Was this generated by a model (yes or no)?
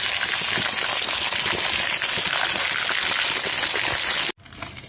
no